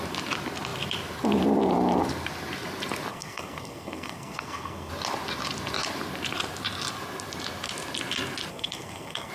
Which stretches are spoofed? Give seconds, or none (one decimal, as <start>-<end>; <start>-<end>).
3.1-4.9; 8.5-9.3